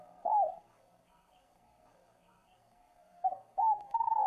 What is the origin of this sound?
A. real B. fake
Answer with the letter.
B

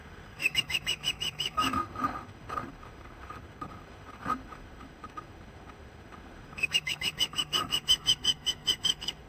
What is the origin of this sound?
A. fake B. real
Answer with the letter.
A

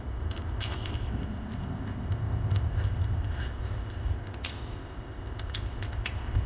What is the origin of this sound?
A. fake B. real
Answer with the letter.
A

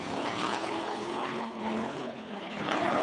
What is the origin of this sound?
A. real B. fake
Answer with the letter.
B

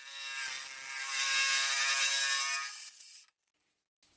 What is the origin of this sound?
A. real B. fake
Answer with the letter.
A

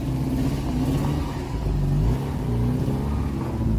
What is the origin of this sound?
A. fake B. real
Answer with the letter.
B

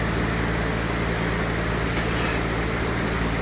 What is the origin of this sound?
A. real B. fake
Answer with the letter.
A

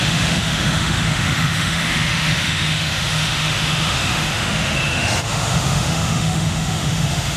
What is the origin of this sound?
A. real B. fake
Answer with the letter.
B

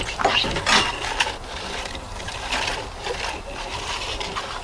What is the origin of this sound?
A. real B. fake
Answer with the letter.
B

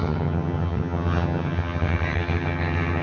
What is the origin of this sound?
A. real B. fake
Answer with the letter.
B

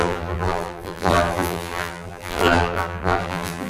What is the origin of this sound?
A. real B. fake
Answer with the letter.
B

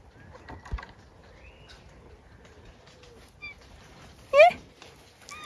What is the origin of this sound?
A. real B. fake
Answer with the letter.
A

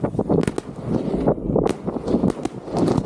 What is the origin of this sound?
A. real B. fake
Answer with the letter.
A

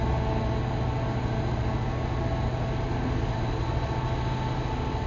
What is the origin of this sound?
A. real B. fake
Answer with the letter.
A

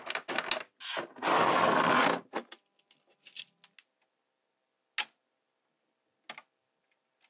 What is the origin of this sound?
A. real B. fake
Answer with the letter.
A